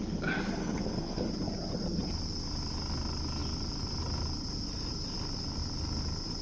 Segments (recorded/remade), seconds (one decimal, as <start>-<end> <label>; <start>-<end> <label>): 0.0-0.6 recorded; 0.6-1.3 remade; 1.3-6.4 recorded